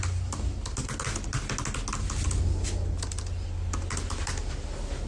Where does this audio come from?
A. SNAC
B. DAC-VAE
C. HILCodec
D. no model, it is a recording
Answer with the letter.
D